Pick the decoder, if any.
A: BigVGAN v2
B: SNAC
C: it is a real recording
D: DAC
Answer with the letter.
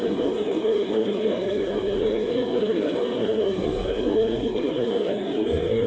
B